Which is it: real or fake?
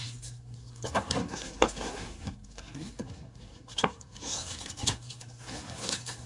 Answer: fake